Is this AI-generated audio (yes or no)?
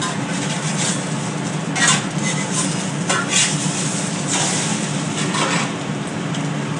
no